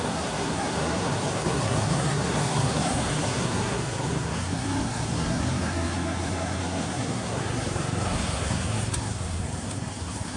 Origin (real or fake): fake